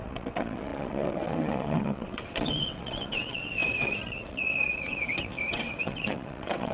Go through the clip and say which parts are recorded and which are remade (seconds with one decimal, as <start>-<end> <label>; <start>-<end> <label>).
0.0-6.7 remade